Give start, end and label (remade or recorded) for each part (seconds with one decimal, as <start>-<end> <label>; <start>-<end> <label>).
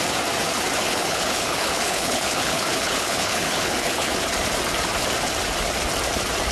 0.0-0.8 recorded; 0.8-4.1 remade; 4.1-6.5 recorded